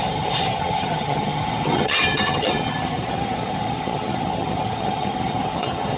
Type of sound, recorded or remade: remade